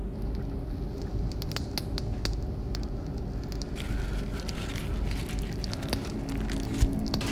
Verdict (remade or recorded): recorded